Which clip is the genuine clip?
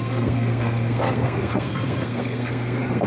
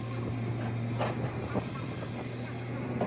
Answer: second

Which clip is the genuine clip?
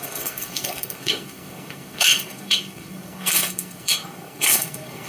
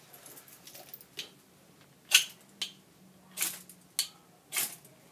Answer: second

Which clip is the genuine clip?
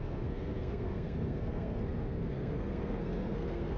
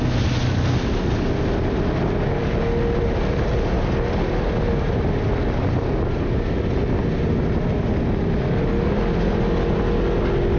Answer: second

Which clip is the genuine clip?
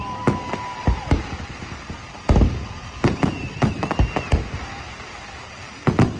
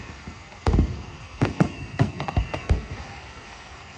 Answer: first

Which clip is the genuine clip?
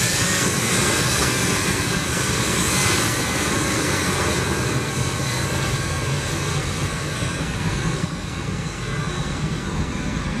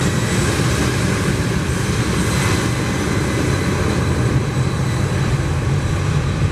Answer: second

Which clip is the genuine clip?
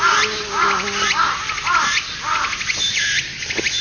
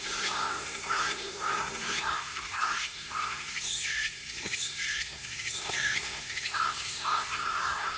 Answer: first